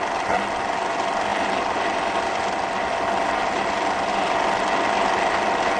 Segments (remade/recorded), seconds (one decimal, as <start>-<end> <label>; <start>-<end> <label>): 0.0-5.8 recorded